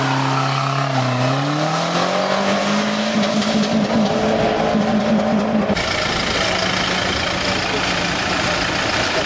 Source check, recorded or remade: recorded